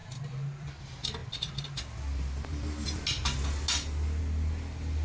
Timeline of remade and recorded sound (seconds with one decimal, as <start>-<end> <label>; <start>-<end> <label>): 0.0-0.7 remade; 0.7-5.0 recorded